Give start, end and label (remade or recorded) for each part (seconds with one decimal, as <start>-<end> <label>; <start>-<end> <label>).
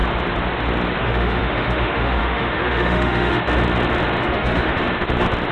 0.0-1.0 recorded; 1.0-3.4 remade; 3.4-4.2 recorded; 4.2-4.8 remade; 4.8-5.5 recorded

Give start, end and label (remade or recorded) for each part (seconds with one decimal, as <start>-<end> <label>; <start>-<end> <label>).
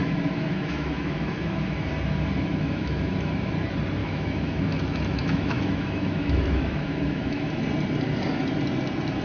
0.0-1.9 remade; 1.9-2.5 recorded; 2.5-3.5 remade; 3.5-4.0 recorded; 4.0-7.6 remade; 7.6-9.2 recorded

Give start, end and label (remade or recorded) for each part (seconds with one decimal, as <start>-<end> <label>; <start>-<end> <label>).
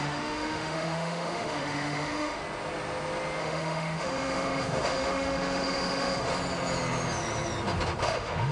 0.0-2.4 remade; 2.4-3.4 recorded; 3.4-6.3 remade; 6.3-8.0 recorded; 8.0-8.5 remade